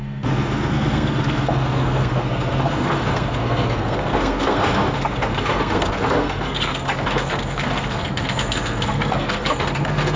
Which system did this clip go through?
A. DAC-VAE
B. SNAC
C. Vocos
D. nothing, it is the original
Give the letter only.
B